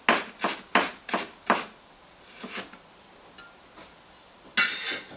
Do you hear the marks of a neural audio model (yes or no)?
no